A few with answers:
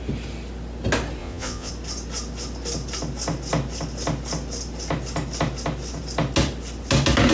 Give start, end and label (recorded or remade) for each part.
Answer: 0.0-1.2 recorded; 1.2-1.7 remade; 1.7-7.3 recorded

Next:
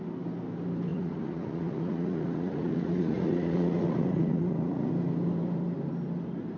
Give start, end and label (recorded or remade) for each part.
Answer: 0.0-0.9 recorded; 0.9-4.9 remade; 4.9-6.6 recorded

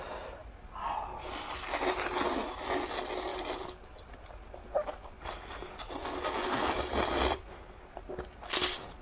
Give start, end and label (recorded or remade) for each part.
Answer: 0.0-9.0 recorded

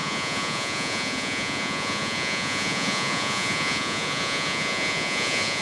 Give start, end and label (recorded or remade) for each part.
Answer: 0.0-5.6 remade

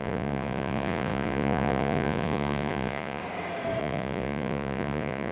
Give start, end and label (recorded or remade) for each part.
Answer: 0.0-3.2 remade; 3.2-3.8 recorded; 3.8-5.3 remade

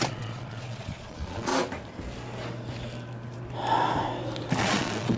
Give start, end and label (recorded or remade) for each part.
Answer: 0.0-1.5 remade; 1.5-4.6 recorded; 4.6-5.2 remade

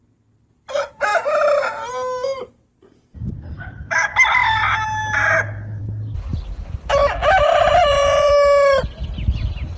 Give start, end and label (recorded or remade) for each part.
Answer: 0.0-7.8 recorded; 7.8-8.3 remade; 8.3-9.8 recorded

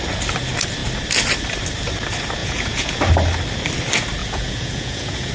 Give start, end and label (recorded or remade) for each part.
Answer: 0.0-2.4 recorded; 2.4-3.0 remade; 3.0-4.2 recorded; 4.2-5.3 remade